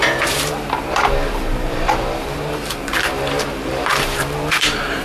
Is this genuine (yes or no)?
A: no